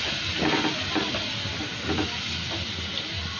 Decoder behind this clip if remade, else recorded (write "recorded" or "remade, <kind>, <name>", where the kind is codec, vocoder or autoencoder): recorded